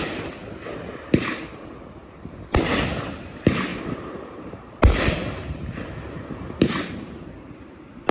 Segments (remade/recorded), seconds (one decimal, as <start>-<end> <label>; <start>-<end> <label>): 0.0-3.7 recorded; 3.7-7.5 remade; 7.5-8.1 recorded